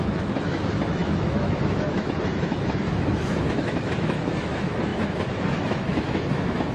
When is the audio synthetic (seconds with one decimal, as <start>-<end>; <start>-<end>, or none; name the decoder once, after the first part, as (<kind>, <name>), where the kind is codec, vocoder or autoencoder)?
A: 0.0-6.7 (autoencoder, DAC-VAE)